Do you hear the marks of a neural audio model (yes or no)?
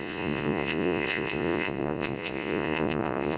yes